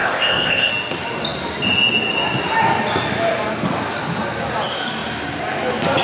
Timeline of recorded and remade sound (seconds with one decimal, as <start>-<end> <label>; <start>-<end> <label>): 0.0-0.7 remade; 0.7-6.0 recorded